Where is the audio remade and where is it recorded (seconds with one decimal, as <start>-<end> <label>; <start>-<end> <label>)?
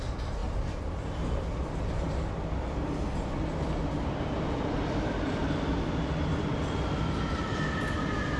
0.0-8.4 recorded